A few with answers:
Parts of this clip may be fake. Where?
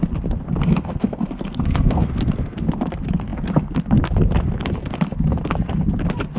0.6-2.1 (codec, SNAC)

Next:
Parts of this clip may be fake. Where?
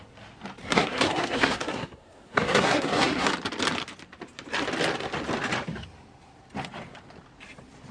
0.6-3.3 (codec, SNAC)